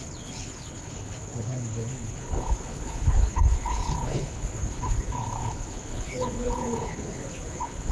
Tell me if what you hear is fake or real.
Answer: fake